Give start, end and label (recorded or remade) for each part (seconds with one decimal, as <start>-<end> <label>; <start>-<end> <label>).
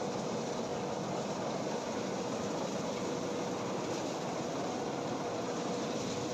0.0-6.3 recorded